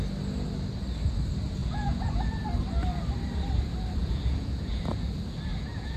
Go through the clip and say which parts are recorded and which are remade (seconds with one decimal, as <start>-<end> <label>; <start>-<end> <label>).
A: 0.0-1.6 recorded; 1.6-2.3 remade; 2.3-4.0 recorded; 4.0-4.8 remade; 4.8-5.5 recorded; 5.5-6.0 remade